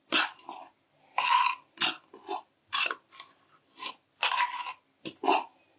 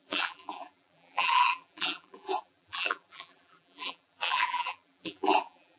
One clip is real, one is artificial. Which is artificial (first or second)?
second